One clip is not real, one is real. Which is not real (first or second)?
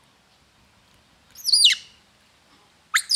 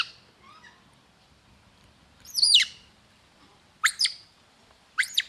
second